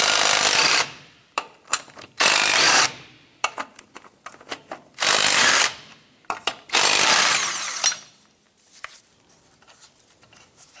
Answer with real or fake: fake